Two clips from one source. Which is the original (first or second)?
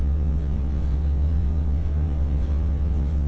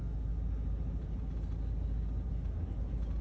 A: second